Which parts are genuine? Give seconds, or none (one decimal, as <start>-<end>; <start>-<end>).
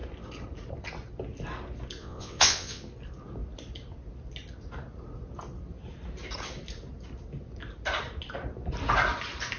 0.0-2.0; 2.8-9.6